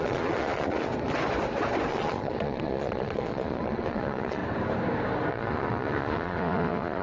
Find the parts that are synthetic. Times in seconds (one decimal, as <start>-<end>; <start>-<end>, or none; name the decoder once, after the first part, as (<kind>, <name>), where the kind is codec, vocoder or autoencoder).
0.0-0.9 (vocoder, Vocos); 1.9-4.4; 5.3-7.0